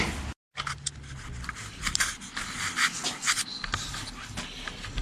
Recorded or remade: recorded